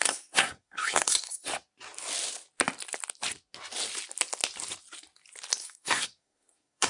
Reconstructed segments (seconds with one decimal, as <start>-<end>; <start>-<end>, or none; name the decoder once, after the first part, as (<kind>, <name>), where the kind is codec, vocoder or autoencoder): 0.0-1.5 (codec, SNAC); 5.6-6.9